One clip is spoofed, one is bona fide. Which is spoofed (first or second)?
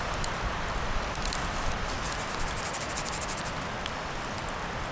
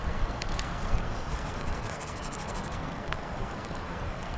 second